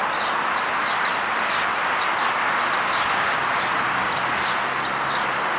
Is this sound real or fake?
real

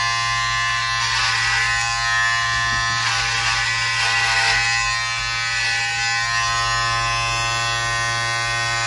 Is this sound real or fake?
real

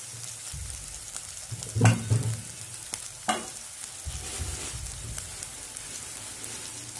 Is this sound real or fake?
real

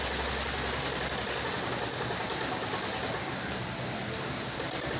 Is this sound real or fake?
real